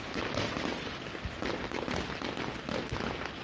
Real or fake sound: real